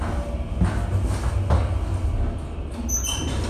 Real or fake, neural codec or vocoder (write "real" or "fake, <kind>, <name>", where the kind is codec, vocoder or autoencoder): real